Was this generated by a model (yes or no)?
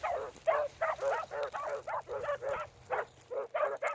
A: no